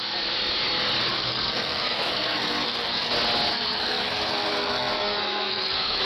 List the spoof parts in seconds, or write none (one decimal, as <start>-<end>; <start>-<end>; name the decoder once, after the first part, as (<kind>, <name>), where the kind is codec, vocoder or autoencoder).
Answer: 1.1-3.1 (codec, SNAC); 3.5-6.0